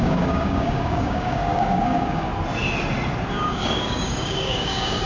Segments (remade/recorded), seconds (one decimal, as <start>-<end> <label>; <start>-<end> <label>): 0.0-2.3 remade; 2.3-3.3 recorded; 3.3-5.1 remade